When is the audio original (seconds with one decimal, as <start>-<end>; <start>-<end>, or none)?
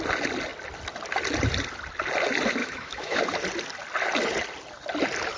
0.0-2.6; 3.2-5.4